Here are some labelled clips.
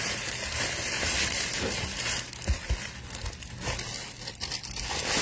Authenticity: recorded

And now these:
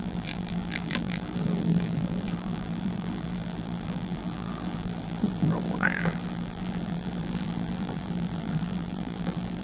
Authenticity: remade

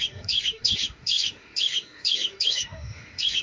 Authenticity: remade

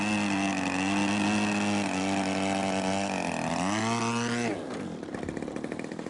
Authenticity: recorded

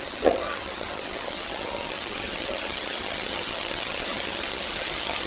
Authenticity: remade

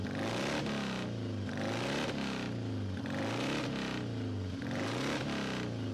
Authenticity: recorded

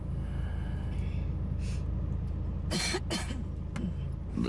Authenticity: recorded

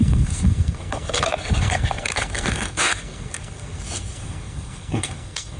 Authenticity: remade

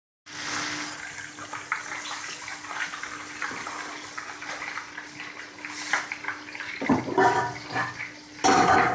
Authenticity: recorded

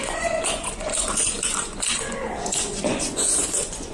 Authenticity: remade